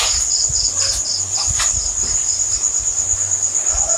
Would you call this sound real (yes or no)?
yes